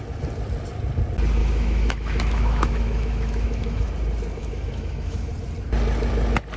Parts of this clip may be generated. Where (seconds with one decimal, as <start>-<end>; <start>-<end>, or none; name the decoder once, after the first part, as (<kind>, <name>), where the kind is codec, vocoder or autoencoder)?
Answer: 1.4-3.9 (autoencoder, DAC-VAE); 4.4-5.3